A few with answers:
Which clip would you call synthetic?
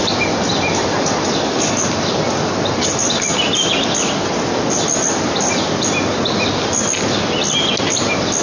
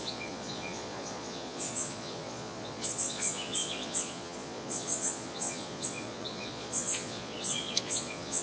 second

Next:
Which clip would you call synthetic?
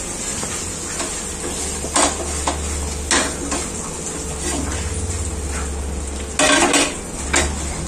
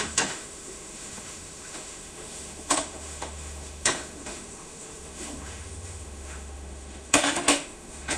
second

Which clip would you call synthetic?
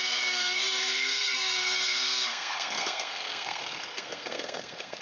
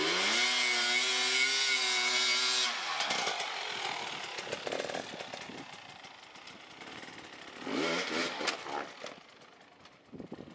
first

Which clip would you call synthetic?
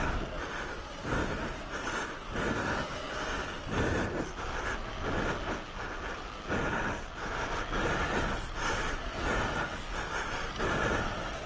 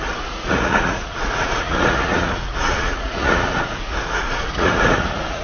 second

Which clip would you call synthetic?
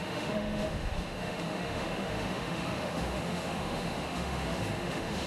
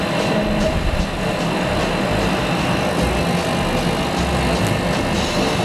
first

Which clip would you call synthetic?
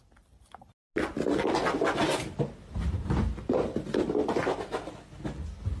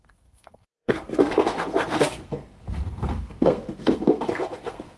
second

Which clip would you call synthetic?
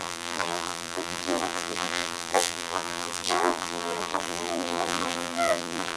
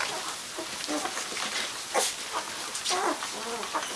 first